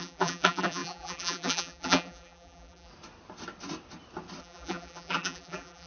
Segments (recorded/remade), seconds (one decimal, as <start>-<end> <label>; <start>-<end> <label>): 0.0-2.9 remade; 2.9-4.4 recorded; 4.4-5.9 remade